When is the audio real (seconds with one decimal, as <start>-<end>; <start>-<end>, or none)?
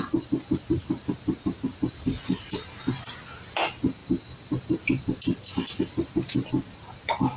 0.0-7.4